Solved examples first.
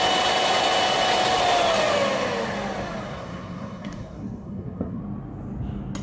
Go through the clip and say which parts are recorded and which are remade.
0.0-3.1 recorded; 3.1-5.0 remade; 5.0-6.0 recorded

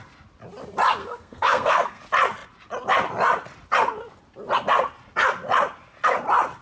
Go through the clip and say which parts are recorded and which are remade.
0.0-1.0 recorded; 1.0-2.0 remade; 2.0-6.6 recorded

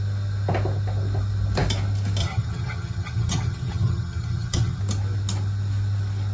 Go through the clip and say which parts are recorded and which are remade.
0.0-2.2 recorded; 2.2-4.8 remade; 4.8-6.3 recorded

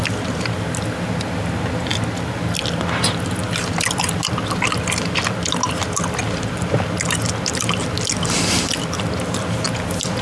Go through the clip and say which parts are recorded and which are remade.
0.0-10.2 recorded